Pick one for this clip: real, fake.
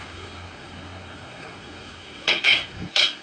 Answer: fake